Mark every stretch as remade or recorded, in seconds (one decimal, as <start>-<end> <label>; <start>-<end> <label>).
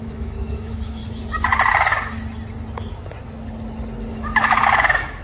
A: 0.0-1.0 remade; 1.0-4.1 recorded; 4.1-5.2 remade